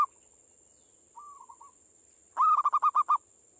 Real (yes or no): yes